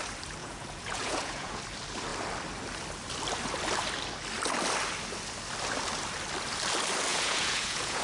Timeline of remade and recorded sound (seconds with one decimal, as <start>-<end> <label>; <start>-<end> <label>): 0.0-0.4 recorded; 0.4-1.6 remade; 1.6-7.1 recorded; 7.1-8.0 remade